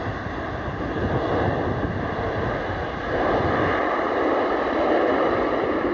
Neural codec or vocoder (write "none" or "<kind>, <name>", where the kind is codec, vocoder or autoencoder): vocoder, BigVGAN v2